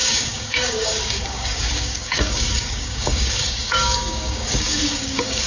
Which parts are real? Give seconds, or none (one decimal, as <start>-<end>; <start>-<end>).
none